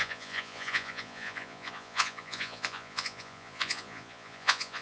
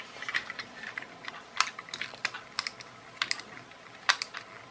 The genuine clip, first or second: second